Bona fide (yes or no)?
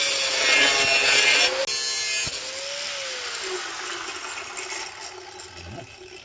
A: yes